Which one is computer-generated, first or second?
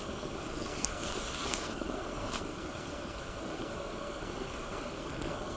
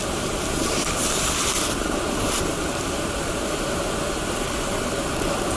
first